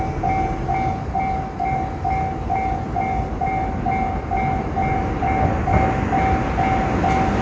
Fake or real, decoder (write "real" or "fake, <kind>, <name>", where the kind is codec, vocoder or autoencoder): real